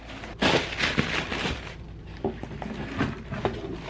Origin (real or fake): real